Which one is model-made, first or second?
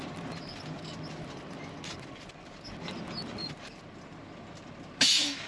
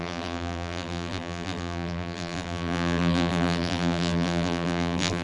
second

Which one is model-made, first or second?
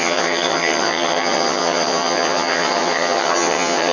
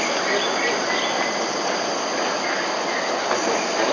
first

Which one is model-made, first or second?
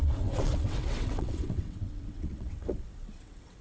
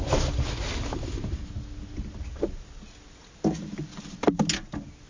first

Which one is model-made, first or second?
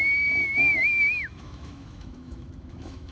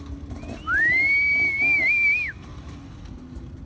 first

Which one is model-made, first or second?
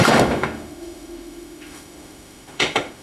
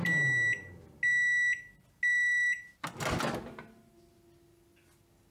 first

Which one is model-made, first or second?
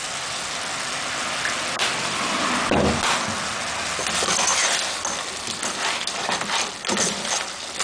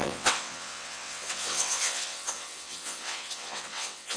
second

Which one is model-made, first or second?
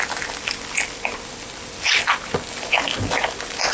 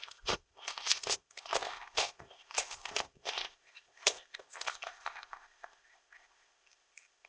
second